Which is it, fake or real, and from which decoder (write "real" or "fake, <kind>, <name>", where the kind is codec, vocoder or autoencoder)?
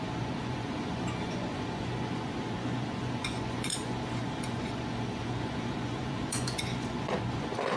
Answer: fake, vocoder, Vocos